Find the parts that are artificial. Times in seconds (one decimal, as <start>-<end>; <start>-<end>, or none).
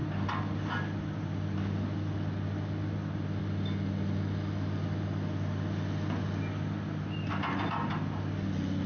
none